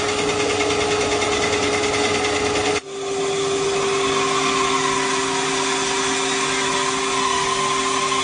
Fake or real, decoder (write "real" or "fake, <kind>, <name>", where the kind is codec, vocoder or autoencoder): real